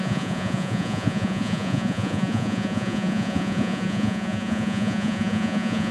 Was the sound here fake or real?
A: fake